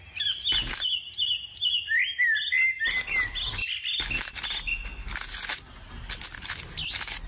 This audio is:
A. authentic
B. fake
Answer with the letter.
A